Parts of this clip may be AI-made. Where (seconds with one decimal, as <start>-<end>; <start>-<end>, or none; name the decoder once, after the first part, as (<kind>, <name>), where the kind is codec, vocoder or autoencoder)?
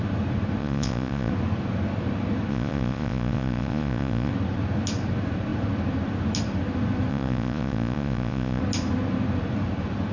0.6-1.3 (vocoder, Vocos); 2.5-4.3; 7.1-8.6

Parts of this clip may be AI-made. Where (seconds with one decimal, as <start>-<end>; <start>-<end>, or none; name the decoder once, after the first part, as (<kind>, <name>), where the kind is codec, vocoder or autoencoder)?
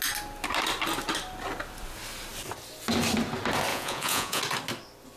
3.7-4.4 (vocoder, Vocos)